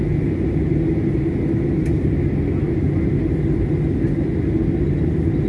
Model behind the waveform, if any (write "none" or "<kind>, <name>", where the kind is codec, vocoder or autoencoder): none